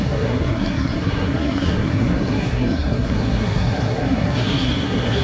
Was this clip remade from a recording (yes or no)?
yes